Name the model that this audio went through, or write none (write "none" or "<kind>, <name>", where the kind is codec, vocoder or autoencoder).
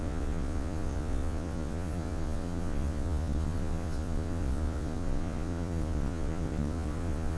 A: vocoder, Vocos